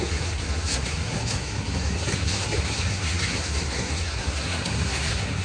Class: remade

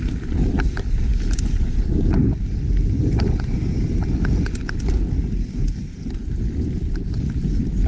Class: recorded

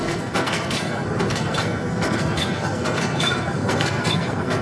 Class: remade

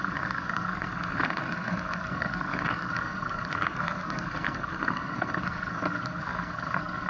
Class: remade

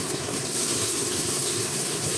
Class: remade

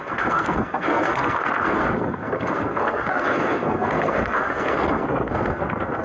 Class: remade